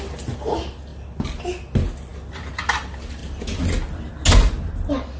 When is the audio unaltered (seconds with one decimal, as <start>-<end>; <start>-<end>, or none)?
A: 0.0-5.2